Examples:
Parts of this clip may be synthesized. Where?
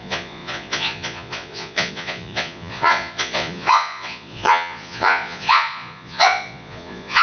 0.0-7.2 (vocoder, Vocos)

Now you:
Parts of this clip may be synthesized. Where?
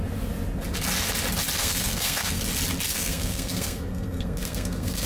1.6-2.4 (codec, SNAC); 2.9-5.1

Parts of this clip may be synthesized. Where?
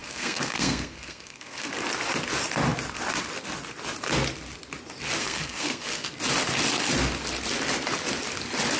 0.0-1.7 (codec, SNAC); 5.2-6.1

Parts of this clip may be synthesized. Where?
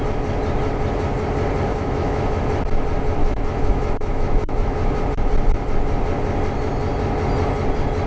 1.7-2.4 (autoencoder, DAC-VAE); 3.2-5.0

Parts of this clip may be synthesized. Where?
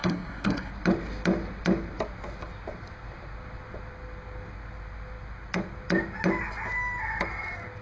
0.0-0.7 (codec, SNAC)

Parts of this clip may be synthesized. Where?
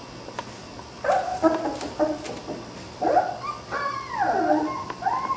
none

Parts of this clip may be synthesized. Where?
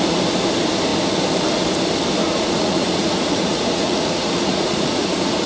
2.2-5.5 (vocoder, Vocos)